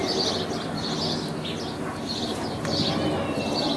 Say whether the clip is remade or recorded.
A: recorded